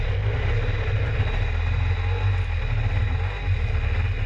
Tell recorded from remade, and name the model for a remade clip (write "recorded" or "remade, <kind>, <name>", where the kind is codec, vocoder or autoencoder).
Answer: recorded